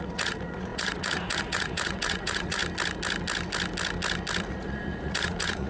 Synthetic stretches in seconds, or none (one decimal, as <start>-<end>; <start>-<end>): 0.0-2.6; 4.5-5.7